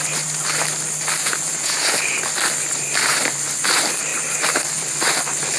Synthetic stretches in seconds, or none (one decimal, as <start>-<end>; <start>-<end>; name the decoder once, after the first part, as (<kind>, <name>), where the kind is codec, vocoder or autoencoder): 1.2-1.9 (vocoder, Vocos)